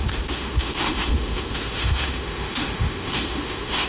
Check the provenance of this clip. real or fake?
fake